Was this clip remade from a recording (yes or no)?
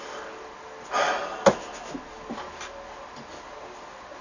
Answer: no